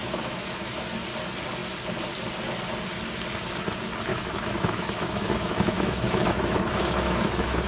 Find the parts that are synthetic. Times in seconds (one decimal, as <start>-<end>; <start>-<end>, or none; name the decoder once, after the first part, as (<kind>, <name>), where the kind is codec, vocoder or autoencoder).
0.0-0.9 (autoencoder, DAC-VAE); 4.1-7.7